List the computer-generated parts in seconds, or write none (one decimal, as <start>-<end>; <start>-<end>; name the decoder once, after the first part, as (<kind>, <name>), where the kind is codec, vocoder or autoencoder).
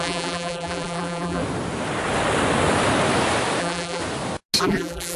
0.0-1.4 (vocoder, BigVGAN v2); 3.6-4.0; 4.6-5.2